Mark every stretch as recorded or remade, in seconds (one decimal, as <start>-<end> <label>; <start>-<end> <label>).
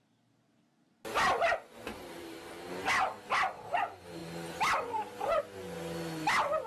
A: 0.0-1.9 recorded; 1.9-2.7 remade; 2.7-6.7 recorded